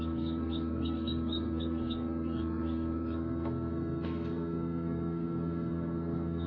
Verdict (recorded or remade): remade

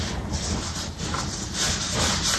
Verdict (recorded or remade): recorded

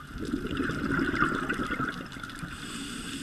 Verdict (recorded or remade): recorded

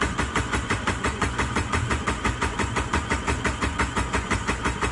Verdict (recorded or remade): remade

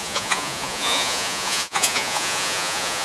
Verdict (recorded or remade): remade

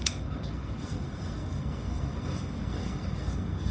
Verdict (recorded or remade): remade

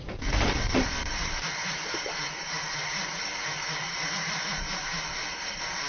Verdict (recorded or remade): remade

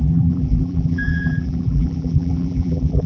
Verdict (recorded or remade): remade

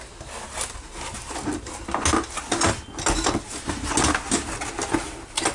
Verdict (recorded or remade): recorded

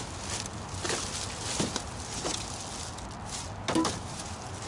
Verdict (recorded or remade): recorded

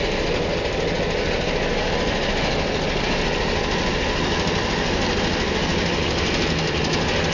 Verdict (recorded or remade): recorded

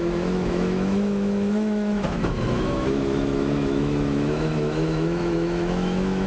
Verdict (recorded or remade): remade